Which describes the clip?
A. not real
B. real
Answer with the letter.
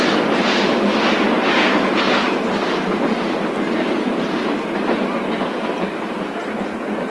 B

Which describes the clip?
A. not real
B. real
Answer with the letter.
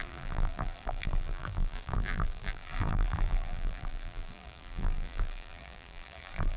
A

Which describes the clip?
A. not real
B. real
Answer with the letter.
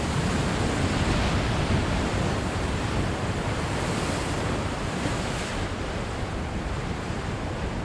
B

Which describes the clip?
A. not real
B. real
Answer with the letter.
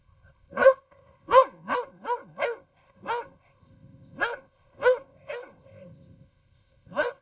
A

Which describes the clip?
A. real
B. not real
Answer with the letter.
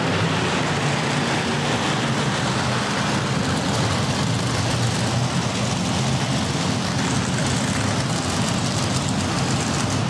A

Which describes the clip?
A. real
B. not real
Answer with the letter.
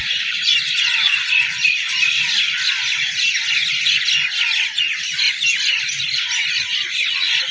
A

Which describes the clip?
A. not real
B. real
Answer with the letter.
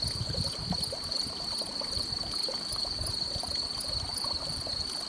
B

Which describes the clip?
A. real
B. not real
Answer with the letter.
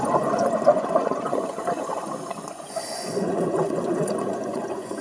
B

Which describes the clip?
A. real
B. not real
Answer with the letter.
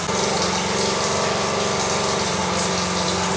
A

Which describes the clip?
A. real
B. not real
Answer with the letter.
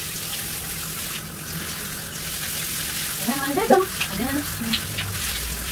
A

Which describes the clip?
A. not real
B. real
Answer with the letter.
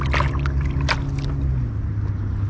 B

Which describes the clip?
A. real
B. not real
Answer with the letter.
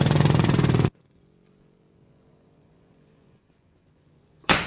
B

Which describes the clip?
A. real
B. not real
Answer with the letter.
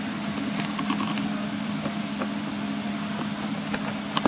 A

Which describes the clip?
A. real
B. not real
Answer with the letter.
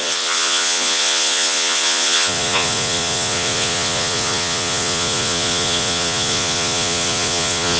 B